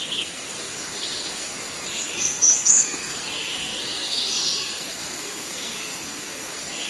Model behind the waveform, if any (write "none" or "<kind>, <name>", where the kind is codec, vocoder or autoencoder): codec, SNAC